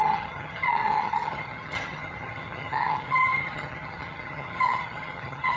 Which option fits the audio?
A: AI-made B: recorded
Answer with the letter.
A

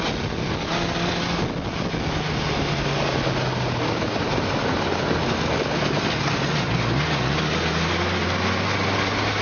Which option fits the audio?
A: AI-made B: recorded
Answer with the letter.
B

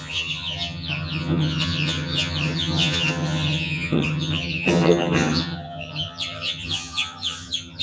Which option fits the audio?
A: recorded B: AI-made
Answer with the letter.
B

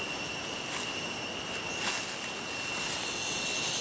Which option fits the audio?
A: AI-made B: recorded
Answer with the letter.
B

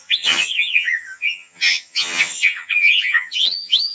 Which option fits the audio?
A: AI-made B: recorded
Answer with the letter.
A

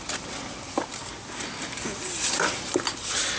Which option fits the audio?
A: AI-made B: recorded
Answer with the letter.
B